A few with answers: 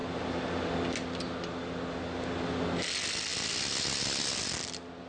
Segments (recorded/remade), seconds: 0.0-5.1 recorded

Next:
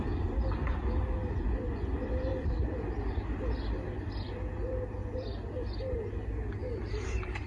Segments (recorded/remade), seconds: 0.0-7.5 recorded

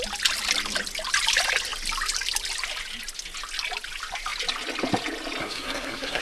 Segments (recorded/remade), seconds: 0.0-5.4 recorded; 5.4-6.2 remade